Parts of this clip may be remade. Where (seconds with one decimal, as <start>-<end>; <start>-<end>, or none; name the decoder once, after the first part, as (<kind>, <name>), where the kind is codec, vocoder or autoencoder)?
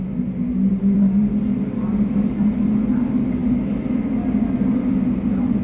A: 0.7-2.7 (vocoder, BigVGAN v2)